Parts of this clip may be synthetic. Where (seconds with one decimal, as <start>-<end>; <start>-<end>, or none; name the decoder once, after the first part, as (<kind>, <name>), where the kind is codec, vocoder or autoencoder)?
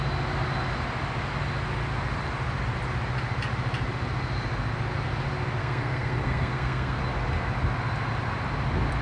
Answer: 5.6-7.0 (codec, SNAC)